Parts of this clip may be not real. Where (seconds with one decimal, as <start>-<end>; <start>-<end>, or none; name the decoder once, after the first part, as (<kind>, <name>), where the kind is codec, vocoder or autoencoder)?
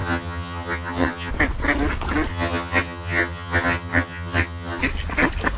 0.0-1.3 (vocoder, HiFi-GAN); 2.3-4.8